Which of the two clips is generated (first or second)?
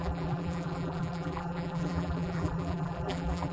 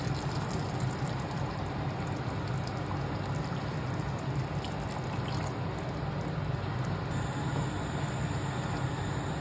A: first